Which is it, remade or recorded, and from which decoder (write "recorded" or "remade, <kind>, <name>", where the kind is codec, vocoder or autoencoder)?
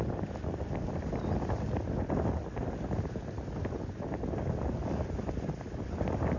recorded